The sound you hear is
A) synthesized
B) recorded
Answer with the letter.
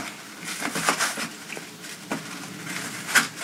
B